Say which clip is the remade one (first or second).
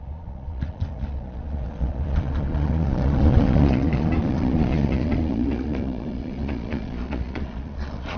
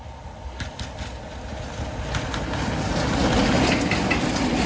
first